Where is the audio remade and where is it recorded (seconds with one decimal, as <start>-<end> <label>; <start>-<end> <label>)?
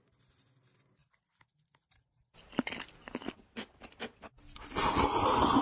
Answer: 0.0-5.6 recorded